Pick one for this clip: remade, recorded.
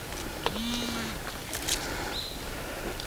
recorded